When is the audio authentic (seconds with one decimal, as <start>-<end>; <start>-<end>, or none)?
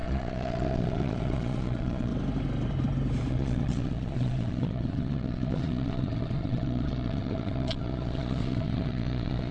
2.1-3.3